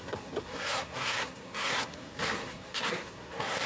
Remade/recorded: remade